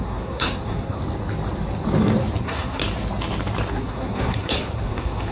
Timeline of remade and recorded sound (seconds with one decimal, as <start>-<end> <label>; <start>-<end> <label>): 0.0-1.0 remade; 1.0-2.4 recorded; 2.4-2.8 remade; 2.8-3.7 recorded; 3.7-5.3 remade